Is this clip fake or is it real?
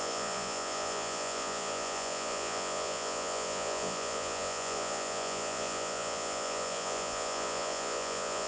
fake